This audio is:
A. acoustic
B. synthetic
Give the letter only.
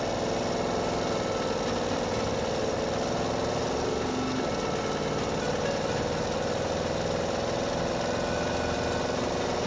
A